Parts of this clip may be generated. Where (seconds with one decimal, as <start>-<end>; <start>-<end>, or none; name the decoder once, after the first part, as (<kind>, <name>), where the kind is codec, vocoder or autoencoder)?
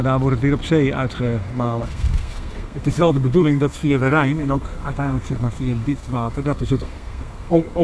1.2-7.8 (codec, SNAC)